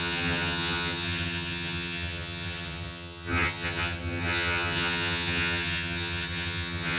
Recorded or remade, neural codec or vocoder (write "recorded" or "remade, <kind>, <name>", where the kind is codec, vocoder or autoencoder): remade, vocoder, HiFi-GAN